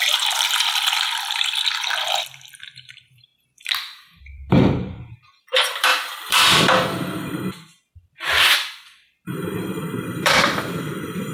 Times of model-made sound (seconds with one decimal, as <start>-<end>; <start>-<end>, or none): 0.0-3.3; 4.2-11.3